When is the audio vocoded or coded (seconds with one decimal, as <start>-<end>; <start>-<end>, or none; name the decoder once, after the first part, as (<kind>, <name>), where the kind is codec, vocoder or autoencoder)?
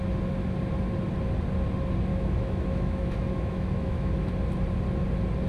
2.1-4.3 (autoencoder, DAC-VAE)